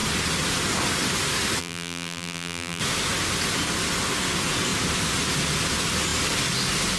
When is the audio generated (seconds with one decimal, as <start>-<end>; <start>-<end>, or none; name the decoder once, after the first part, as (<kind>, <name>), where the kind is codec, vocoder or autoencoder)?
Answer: 1.6-2.8 (vocoder, BigVGAN v2)